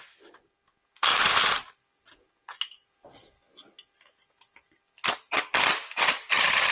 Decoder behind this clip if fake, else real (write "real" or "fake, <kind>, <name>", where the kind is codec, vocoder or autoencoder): real